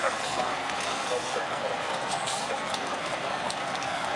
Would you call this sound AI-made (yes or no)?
yes